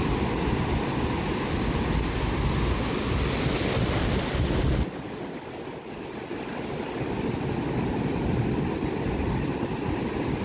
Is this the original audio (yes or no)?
yes